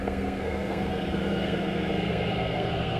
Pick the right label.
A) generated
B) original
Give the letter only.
A